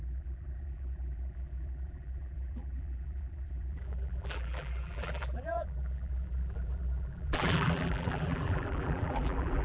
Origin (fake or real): fake